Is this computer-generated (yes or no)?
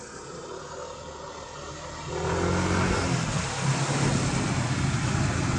no